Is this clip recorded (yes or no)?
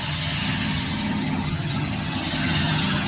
no